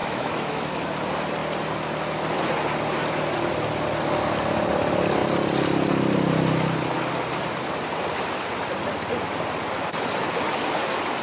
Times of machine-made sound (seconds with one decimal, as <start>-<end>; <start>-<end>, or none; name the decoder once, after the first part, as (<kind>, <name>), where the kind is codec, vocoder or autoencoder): 0.0-0.8 (autoencoder, DAC-VAE)